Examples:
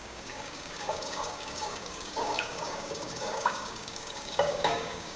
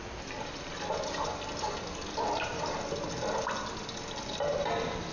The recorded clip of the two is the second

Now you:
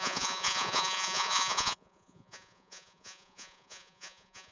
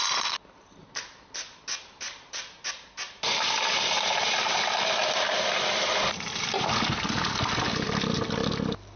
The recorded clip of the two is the second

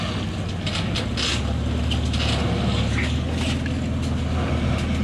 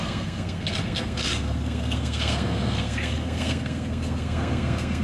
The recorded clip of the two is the first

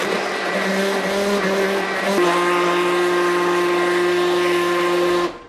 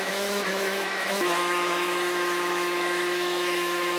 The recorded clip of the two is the first